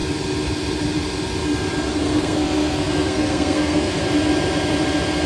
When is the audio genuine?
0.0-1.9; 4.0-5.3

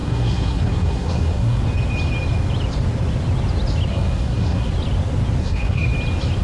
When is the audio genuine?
1.6-3.9; 4.7-5.4; 5.9-6.4

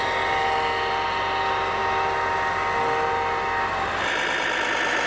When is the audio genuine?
0.0-5.1

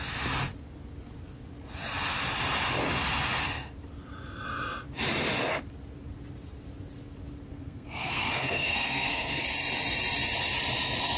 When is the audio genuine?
0.0-7.5; 9.4-11.2

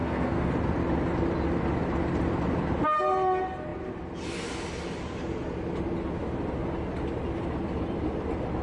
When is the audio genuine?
0.5-8.6